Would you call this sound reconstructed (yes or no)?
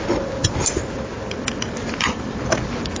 no